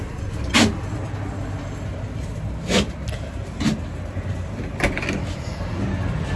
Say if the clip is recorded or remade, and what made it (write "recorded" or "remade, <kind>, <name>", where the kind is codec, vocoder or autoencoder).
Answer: recorded